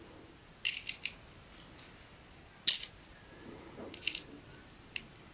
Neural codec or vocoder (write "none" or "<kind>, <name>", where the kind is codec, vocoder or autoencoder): none